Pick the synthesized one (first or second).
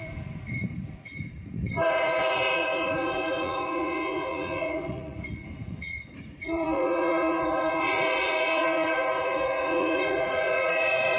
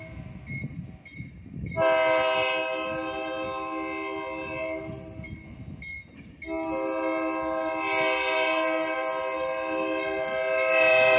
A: first